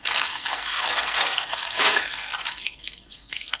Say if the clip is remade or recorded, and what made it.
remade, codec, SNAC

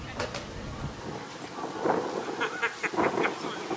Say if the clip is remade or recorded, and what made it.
recorded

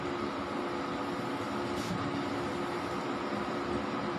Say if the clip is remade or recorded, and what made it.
recorded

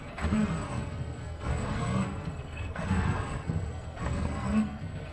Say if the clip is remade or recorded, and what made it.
remade, codec, SNAC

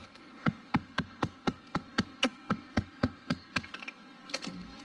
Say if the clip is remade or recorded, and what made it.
remade, codec, SNAC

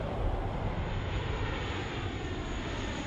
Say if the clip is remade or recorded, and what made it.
recorded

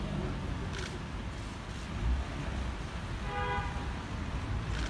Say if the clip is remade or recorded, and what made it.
recorded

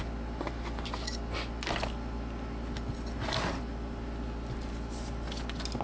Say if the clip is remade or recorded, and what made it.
recorded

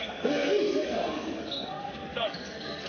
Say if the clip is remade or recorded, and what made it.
remade, codec, SNAC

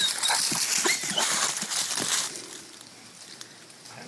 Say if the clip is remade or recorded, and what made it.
recorded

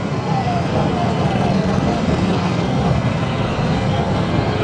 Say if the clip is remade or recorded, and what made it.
remade, codec, SNAC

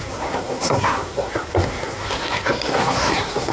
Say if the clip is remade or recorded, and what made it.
remade, codec, SNAC